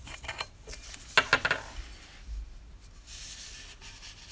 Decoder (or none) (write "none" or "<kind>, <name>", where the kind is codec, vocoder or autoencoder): none